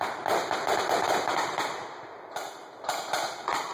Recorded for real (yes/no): yes